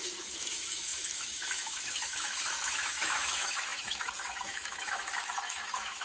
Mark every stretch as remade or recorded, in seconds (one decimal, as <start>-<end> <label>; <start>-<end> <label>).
0.0-6.0 remade